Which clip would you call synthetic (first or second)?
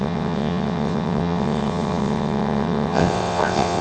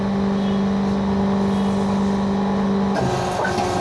first